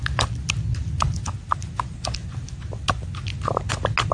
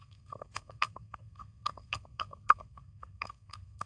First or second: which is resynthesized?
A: second